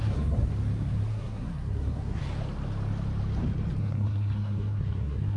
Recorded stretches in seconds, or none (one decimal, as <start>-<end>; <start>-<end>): 0.5-1.1; 2.2-3.8